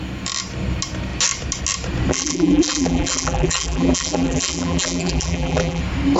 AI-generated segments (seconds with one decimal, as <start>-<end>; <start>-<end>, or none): 2.1-5.8